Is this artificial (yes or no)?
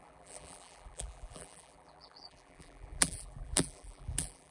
yes